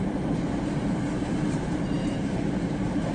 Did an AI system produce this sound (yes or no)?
yes